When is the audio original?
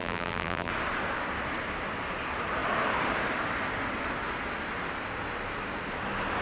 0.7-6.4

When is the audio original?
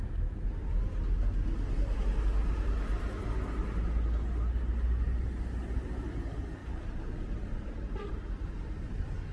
0.0-6.6; 8.1-9.3